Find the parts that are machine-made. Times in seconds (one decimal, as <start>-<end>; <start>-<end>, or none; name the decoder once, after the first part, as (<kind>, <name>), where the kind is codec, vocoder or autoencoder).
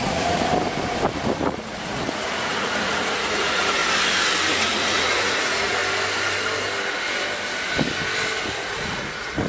0.0-0.5 (vocoder, Vocos); 1.4-3.8; 4.5-5.8; 8.5-9.5